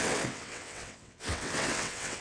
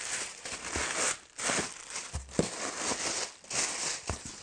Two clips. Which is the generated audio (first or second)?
first